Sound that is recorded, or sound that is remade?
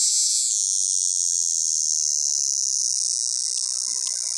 recorded